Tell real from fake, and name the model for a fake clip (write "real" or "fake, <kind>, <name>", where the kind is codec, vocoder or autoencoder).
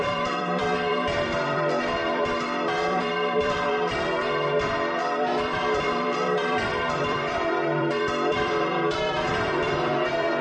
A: fake, vocoder, BigVGAN v2